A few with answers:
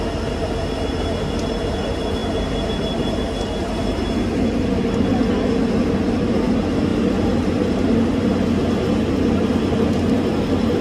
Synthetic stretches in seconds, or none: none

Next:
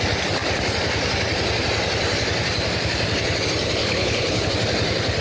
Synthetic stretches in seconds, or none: 3.8-4.5 (codec, HILCodec)

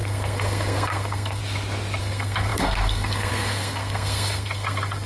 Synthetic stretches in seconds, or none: 0.0-1.4 (codec, SNAC); 2.0-5.1

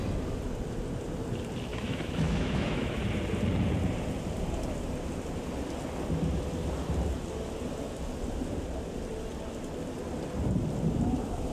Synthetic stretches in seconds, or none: 1.7-3.0 (autoencoder, DAC-VAE)

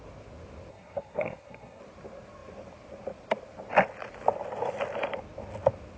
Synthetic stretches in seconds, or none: 0.7-1.8 (codec, SNAC)